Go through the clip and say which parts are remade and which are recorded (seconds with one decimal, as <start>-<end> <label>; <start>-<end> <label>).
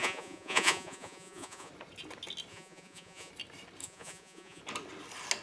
0.0-1.7 remade; 1.7-2.5 recorded; 2.5-3.3 remade; 3.3-3.8 recorded; 3.8-4.6 remade; 4.6-5.4 recorded